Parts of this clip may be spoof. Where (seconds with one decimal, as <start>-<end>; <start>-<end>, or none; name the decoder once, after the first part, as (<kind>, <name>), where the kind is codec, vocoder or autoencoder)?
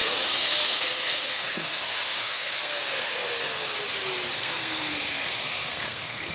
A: 0.0-3.8 (codec, SNAC); 4.4-6.3